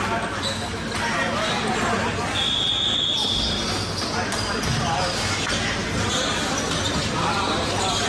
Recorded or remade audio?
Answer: recorded